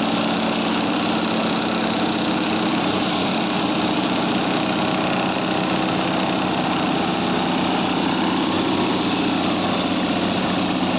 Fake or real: real